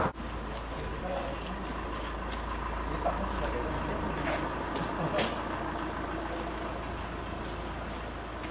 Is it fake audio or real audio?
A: real